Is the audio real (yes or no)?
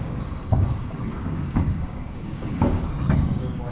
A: no